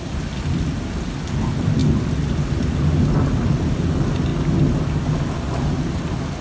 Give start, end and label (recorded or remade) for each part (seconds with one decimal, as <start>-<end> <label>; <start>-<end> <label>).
0.0-6.4 recorded